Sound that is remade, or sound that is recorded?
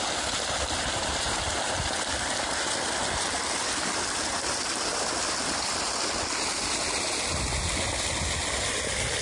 recorded